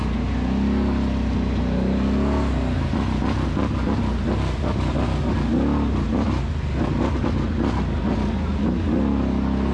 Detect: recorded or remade recorded